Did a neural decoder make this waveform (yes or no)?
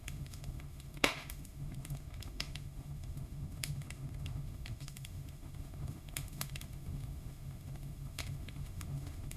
yes